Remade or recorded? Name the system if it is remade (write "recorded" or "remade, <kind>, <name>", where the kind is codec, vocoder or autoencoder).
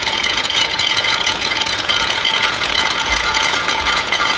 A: remade, vocoder, Vocos